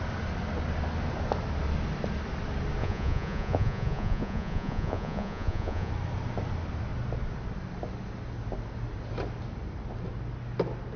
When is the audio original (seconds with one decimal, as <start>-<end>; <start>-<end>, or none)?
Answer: 0.0-2.8; 5.9-11.0